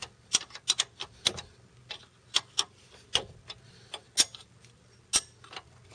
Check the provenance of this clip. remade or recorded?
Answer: recorded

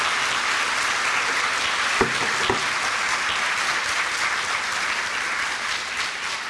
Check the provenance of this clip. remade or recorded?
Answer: recorded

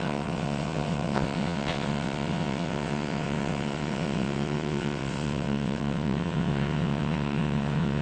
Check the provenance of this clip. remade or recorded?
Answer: remade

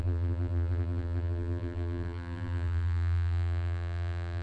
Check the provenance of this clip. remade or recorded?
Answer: remade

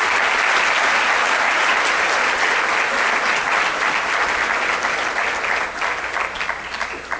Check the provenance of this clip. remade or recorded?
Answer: recorded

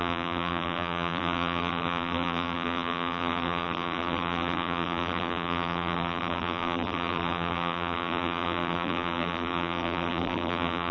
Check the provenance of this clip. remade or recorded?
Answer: remade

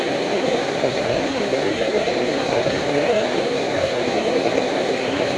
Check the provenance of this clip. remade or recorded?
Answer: remade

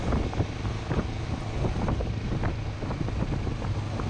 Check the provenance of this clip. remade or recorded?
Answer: recorded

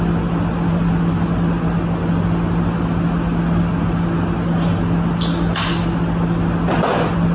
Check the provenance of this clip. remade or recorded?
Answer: recorded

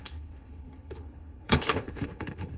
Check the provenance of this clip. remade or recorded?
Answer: remade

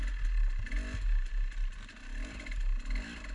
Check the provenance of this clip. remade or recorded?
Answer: recorded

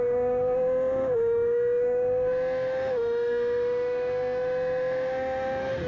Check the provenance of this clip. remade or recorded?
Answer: remade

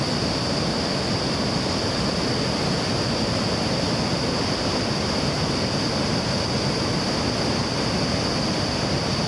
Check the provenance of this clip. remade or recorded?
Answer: recorded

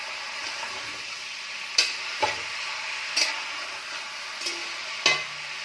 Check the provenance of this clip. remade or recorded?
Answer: recorded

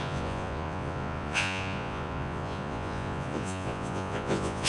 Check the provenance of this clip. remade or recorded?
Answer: remade